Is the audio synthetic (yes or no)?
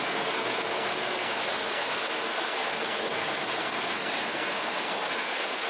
yes